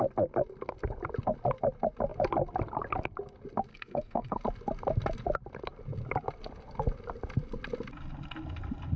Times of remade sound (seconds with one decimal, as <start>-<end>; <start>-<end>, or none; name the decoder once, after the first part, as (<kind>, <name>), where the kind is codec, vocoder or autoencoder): 3.7-4.4 (codec, SNAC)